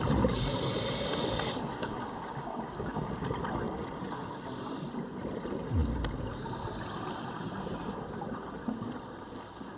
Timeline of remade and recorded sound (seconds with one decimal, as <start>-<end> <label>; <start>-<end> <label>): 0.0-1.8 recorded; 1.8-3.1 remade; 3.1-9.8 recorded